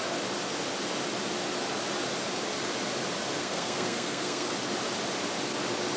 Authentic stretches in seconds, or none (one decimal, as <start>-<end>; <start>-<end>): 0.0-3.4; 4.5-6.0